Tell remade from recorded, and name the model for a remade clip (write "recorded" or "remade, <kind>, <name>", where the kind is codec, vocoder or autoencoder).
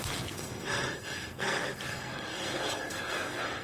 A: remade, codec, SNAC